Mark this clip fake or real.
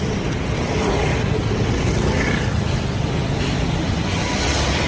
real